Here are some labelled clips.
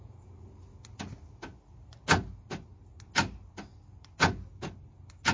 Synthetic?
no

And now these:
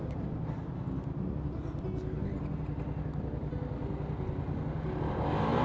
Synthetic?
no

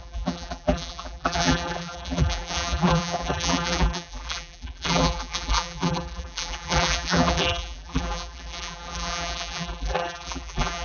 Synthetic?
yes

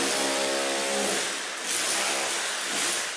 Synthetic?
no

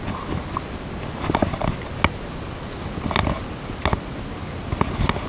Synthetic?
no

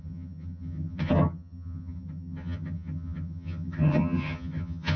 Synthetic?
yes